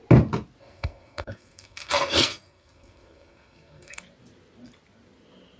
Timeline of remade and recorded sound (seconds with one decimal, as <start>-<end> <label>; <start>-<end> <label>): 0.0-0.6 recorded; 0.6-4.0 remade; 4.0-5.6 recorded